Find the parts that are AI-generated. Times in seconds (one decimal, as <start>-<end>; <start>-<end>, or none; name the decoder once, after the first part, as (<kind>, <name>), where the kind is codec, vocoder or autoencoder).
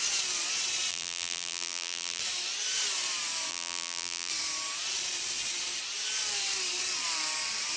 0.9-2.2 (vocoder, BigVGAN v2); 3.5-4.3